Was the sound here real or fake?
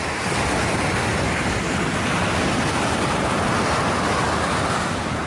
real